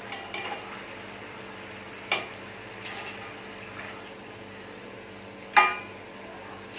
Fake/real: real